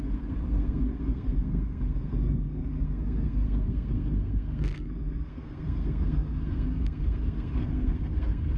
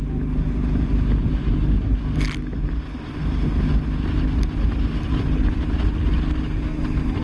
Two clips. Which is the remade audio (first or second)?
first